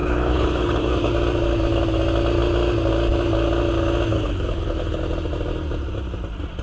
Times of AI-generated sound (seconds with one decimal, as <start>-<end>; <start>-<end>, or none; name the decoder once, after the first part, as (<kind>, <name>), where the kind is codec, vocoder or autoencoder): 0.0-1.1 (codec, HILCodec); 4.1-5.0